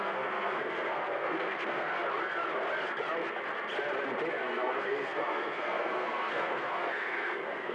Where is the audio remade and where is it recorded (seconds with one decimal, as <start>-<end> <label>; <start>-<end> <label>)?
0.0-1.9 remade; 1.9-4.3 recorded; 4.3-7.7 remade